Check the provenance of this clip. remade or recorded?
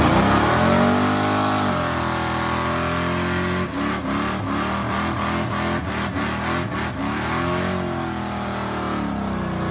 recorded